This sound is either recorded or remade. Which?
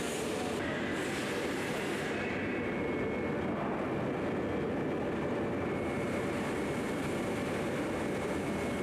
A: recorded